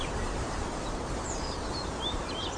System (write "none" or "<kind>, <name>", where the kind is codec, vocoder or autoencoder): none